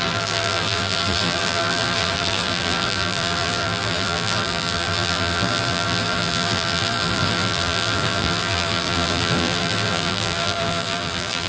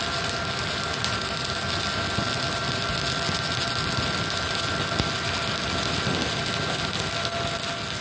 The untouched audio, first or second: second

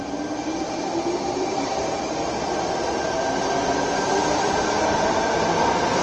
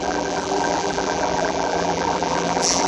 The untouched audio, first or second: first